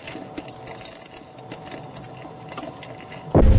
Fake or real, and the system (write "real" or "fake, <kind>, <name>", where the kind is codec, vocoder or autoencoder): real